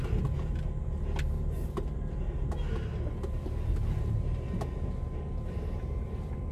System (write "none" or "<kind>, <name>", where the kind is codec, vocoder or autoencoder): none